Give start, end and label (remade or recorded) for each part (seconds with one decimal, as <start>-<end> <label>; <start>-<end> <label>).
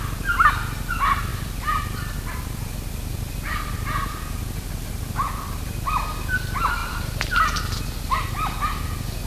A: 0.0-1.3 recorded; 1.3-6.1 remade; 6.1-6.8 recorded; 6.8-7.3 remade; 7.3-9.3 recorded